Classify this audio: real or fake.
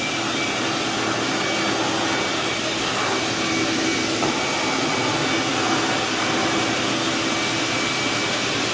real